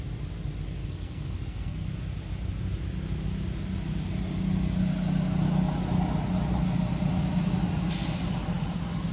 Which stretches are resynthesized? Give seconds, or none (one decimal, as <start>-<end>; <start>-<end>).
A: 0.8-1.9